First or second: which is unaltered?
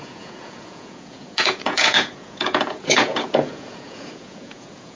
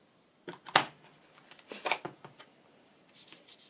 second